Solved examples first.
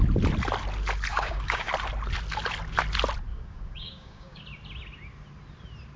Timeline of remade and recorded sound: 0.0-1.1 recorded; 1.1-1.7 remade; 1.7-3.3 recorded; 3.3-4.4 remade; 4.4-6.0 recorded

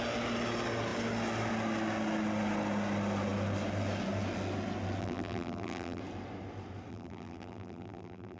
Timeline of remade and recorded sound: 0.0-5.0 recorded; 5.0-6.0 remade; 6.0-6.9 recorded; 6.9-8.4 remade